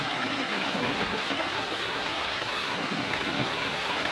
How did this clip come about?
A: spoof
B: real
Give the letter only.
A